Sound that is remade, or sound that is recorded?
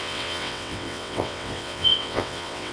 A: remade